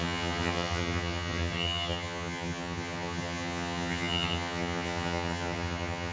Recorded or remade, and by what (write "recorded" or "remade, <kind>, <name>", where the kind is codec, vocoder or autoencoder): remade, vocoder, HiFi-GAN